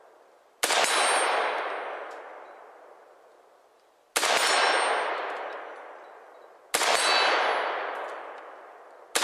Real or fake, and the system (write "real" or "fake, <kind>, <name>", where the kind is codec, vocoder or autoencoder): real